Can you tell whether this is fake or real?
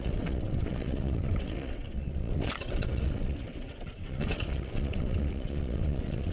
fake